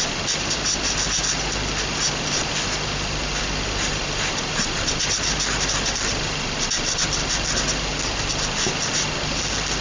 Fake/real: real